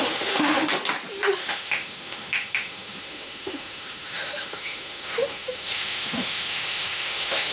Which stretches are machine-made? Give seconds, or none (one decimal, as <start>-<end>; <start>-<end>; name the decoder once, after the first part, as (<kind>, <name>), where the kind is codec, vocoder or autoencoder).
0.0-0.7 (autoencoder, DAC-VAE); 1.4-7.5